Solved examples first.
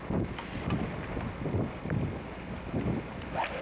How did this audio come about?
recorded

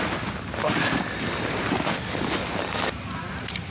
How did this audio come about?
recorded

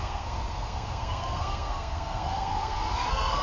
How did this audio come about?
remade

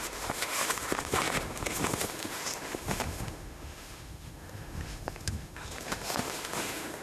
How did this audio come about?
remade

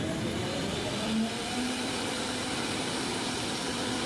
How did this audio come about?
recorded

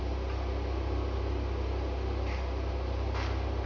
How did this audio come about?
recorded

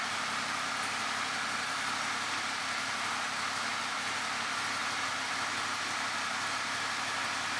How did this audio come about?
recorded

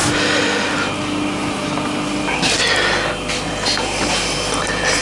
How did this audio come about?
recorded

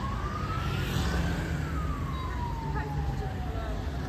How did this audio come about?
recorded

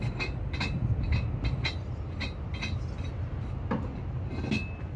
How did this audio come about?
recorded